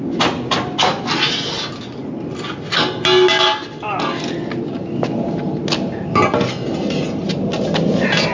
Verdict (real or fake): real